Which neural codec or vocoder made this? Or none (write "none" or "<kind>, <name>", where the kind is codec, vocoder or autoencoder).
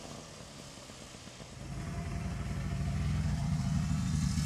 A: none